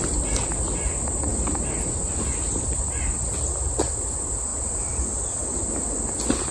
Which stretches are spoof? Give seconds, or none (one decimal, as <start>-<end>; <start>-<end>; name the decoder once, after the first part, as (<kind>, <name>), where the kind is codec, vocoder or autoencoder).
none